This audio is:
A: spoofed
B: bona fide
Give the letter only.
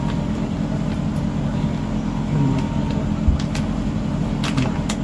B